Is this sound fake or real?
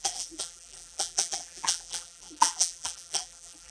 fake